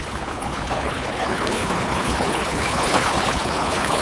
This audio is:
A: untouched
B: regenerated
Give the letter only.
B